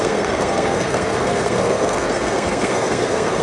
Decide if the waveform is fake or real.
fake